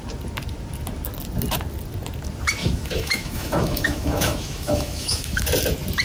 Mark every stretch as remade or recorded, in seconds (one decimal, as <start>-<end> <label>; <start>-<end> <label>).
0.0-2.6 recorded; 2.6-5.4 remade; 5.4-6.0 recorded